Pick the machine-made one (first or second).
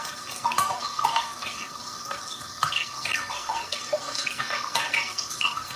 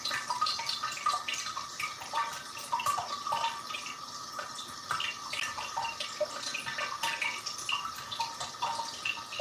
first